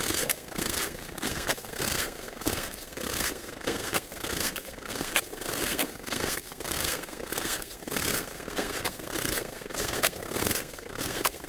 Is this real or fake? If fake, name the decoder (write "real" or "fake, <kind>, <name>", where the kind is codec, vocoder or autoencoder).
fake, codec, SNAC